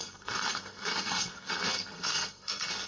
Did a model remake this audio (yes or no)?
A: yes